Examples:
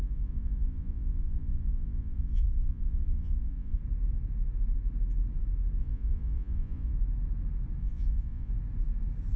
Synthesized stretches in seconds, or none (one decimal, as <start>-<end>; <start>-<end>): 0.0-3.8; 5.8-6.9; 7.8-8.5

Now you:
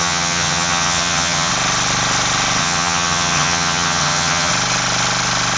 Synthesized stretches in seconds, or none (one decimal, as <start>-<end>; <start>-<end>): 0.0-1.5; 2.6-4.5

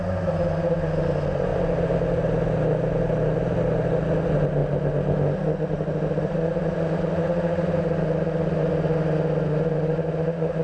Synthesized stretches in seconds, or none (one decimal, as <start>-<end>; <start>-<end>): none

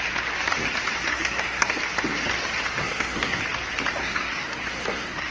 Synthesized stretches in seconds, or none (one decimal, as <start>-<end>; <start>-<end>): 1.1-1.8; 2.8-3.4; 4.0-5.3

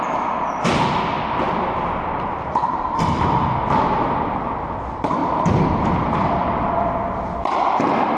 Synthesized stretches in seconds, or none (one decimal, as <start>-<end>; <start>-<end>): none